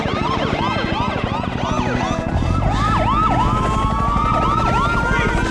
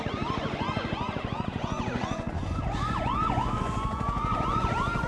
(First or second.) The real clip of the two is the first